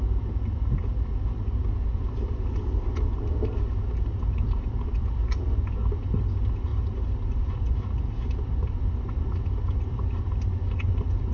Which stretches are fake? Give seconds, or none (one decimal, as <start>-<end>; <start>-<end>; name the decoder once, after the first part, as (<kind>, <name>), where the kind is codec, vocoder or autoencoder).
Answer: none